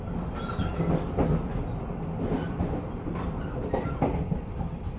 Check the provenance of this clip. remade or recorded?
recorded